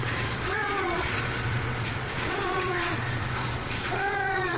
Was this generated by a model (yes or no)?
yes